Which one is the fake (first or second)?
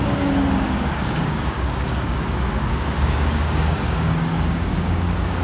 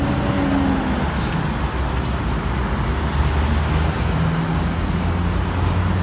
first